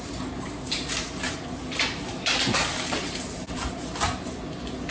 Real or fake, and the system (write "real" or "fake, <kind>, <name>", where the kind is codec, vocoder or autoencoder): real